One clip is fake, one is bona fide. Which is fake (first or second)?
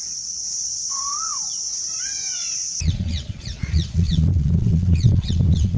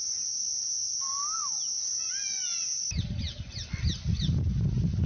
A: first